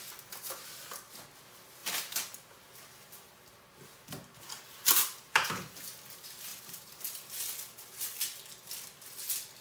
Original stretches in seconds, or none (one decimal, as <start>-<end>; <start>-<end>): 0.0-1.8; 6.0-6.5; 7.2-9.6